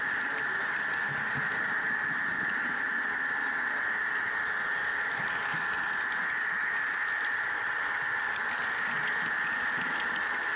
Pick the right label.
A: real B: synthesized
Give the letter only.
A